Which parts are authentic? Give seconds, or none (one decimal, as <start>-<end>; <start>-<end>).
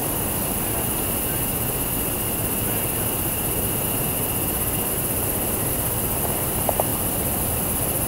0.0-4.9